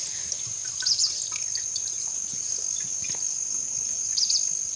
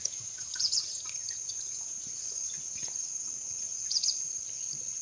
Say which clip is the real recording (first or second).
first